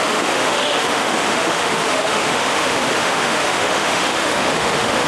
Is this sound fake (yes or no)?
yes